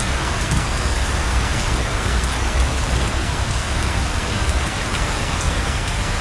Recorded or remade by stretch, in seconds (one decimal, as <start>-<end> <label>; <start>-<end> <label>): 0.0-6.2 remade